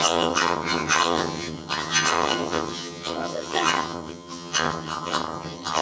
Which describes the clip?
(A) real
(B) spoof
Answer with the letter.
B